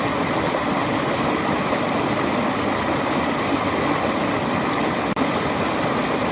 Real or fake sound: real